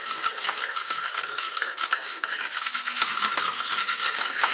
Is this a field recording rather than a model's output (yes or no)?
no